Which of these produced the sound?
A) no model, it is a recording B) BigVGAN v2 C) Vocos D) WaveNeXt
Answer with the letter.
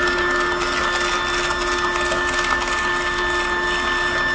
A